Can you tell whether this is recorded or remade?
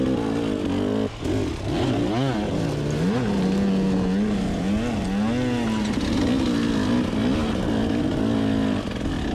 recorded